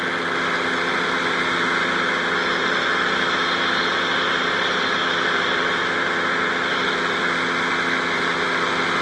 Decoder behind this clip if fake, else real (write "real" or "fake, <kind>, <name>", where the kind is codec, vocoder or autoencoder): real